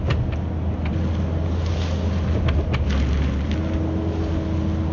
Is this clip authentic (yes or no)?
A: yes